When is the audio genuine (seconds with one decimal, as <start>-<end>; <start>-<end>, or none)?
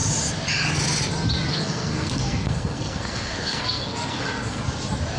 0.0-1.5; 4.6-5.2